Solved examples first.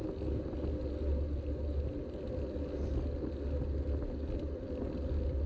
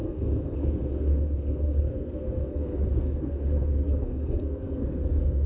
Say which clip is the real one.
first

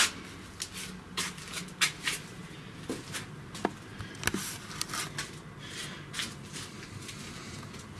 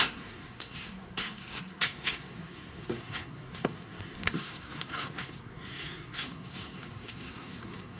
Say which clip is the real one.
first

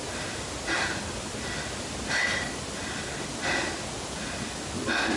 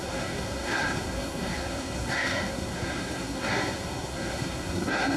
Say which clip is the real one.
first